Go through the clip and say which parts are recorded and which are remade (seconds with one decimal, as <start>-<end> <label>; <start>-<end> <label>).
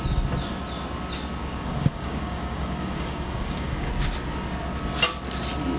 0.0-1.4 recorded; 1.4-3.9 remade; 3.9-5.8 recorded